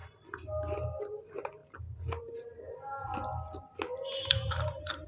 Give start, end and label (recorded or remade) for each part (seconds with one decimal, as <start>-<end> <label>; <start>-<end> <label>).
0.0-1.0 recorded; 1.0-1.6 remade; 1.6-2.2 recorded; 2.2-2.8 remade; 2.8-4.3 recorded; 4.3-5.1 remade